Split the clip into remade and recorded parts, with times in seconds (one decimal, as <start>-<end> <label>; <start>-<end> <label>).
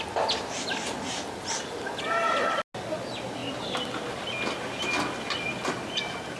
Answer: 0.0-6.4 recorded